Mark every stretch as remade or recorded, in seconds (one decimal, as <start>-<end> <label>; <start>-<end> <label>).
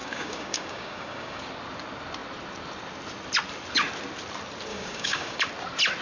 0.0-1.4 remade; 1.4-4.7 recorded; 4.7-5.4 remade; 5.4-6.0 recorded